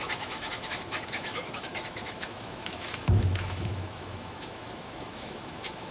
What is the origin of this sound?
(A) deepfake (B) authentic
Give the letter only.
A